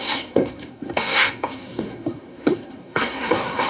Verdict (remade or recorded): remade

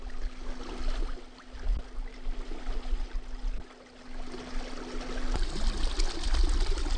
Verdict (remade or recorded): recorded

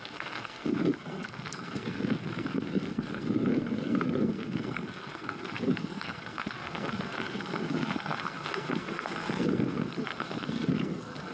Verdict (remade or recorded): remade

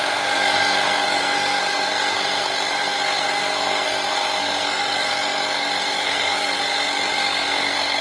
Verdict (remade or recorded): remade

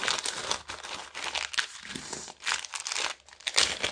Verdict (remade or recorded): recorded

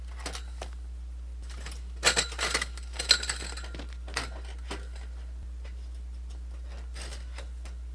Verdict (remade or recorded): recorded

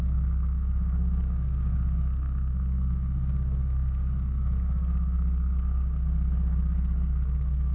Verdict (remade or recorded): remade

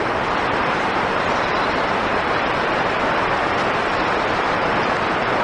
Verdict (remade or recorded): recorded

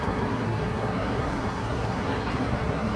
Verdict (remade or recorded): remade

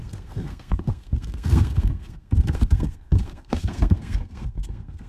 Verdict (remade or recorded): remade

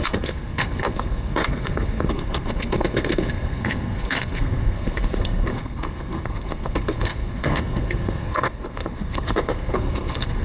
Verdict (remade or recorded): remade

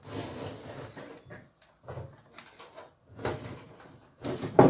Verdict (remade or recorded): recorded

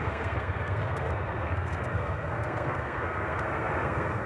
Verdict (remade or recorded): remade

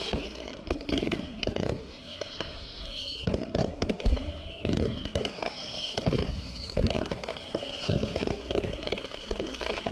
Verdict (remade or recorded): remade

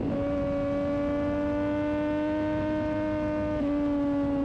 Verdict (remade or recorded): recorded